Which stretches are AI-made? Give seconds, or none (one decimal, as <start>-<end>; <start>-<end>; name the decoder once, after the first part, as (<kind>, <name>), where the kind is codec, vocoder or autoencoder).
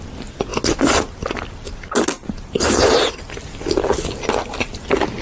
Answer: none